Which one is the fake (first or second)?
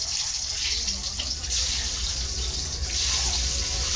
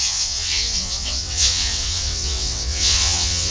second